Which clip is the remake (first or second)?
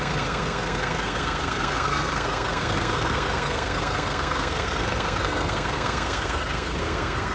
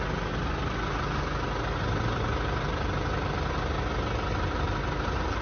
first